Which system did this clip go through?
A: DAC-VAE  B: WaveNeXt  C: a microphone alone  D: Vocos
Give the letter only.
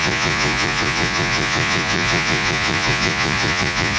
D